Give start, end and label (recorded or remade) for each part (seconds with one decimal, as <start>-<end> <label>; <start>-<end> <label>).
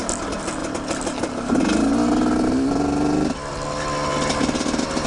0.0-5.1 recorded